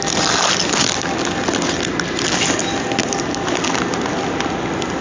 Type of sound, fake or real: real